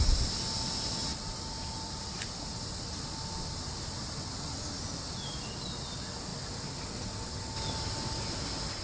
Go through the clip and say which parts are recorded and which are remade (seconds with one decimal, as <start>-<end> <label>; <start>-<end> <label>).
0.0-8.8 recorded